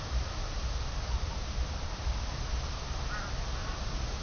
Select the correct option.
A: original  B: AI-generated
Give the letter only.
A